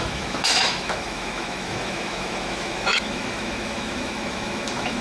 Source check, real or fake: fake